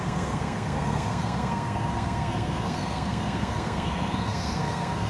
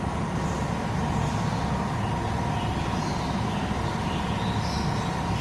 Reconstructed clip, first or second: first